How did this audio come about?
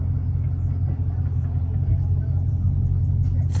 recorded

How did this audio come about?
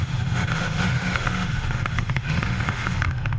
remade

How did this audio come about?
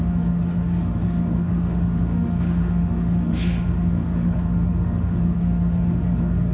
remade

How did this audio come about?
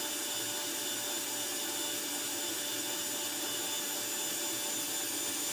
recorded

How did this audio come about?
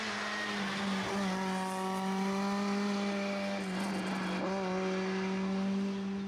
recorded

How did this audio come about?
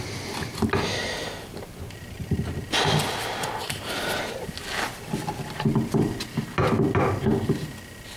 recorded